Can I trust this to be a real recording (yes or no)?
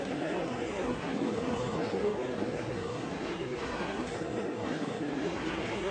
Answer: no